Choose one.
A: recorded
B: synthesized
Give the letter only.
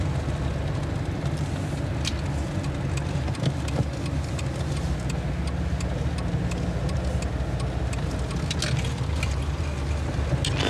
A